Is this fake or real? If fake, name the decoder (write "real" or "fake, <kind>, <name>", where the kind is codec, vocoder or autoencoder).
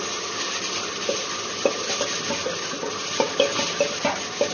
real